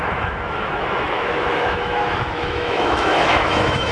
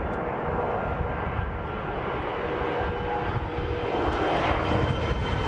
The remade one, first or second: first